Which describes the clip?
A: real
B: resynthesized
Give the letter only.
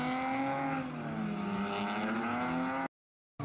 A